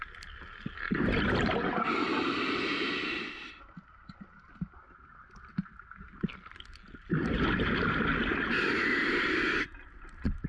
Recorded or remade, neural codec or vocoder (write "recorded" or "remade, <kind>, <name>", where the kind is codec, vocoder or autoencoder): recorded